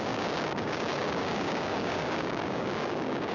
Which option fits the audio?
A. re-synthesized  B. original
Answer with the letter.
A